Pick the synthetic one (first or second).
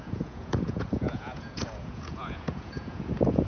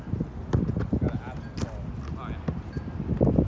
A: first